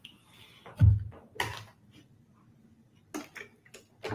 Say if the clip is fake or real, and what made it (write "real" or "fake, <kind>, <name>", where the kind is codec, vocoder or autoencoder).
real